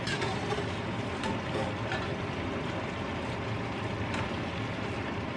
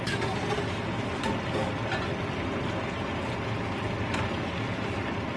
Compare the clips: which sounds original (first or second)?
second